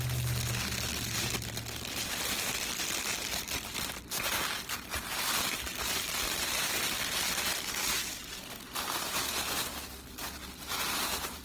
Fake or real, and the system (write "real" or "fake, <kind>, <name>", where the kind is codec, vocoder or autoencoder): real